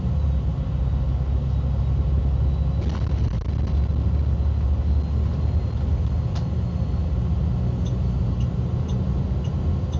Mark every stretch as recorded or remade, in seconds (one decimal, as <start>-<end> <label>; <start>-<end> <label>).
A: 0.0-10.0 recorded